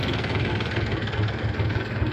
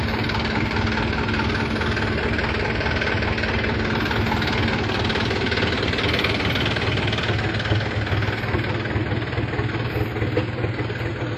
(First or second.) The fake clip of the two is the first